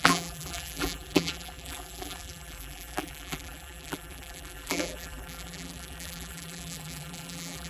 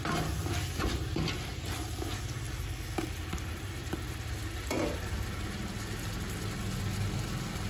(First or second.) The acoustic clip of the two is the second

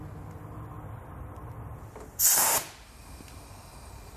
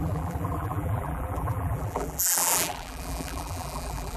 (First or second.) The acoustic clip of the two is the first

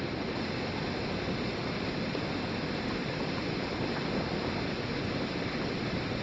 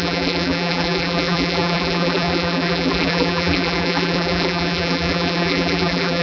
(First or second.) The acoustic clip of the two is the first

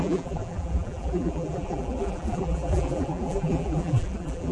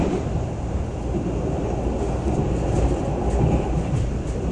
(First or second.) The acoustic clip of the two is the second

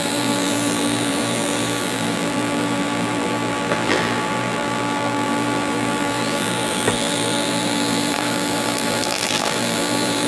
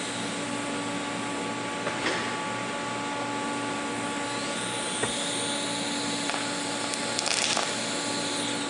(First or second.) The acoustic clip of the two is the second